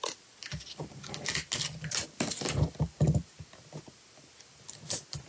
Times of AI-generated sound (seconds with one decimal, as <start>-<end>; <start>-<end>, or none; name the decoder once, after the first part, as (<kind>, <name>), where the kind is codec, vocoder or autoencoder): none

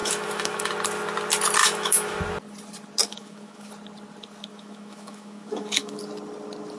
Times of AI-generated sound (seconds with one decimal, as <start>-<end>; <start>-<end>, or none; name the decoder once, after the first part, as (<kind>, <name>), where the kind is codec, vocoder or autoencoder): 0.0-0.7 (autoencoder, DAC-VAE); 1.6-2.2; 3.0-3.7; 4.5-6.0

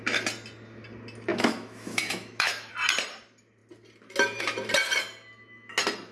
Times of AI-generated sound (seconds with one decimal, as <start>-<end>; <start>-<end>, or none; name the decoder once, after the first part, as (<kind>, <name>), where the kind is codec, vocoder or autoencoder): 1.3-2.7 (autoencoder, DAC-VAE)